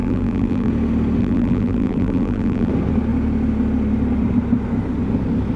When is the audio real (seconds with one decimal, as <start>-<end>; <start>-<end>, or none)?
0.7-1.2; 2.7-5.6